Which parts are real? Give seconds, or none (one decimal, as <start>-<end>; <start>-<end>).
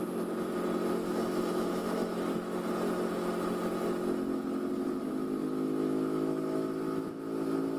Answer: 0.0-1.1; 2.6-5.4; 7.2-7.8